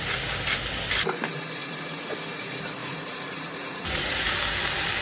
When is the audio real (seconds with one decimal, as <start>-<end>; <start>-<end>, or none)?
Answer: 0.0-1.6; 2.1-2.8; 4.3-5.0